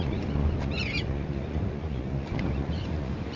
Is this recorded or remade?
remade